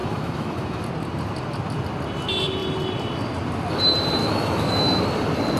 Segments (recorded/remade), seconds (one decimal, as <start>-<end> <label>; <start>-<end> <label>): 0.0-0.8 remade; 0.8-4.2 recorded; 4.2-5.0 remade; 5.0-5.6 recorded